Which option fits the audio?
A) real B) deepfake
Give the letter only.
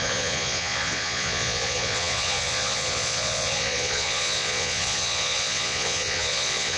B